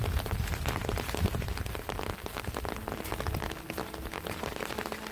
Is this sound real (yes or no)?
yes